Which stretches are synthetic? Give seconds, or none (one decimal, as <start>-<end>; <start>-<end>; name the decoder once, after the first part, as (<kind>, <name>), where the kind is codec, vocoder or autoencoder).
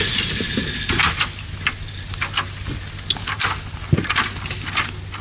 3.2-4.2 (vocoder, BigVGAN v2)